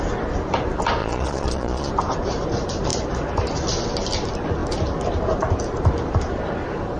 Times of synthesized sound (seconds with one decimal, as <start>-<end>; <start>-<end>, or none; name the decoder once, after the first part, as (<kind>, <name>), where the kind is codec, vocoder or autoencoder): 1.0-1.9 (vocoder, Vocos)